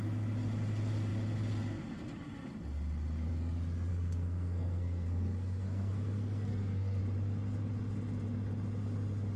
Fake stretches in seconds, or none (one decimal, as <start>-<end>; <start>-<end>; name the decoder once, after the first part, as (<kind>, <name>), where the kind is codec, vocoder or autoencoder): 3.9-7.0 (codec, SNAC)